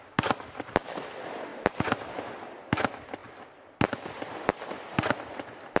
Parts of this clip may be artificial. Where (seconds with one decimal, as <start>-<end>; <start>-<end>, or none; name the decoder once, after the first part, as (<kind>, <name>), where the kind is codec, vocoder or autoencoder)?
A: 1.5-2.1 (vocoder, BigVGAN v2)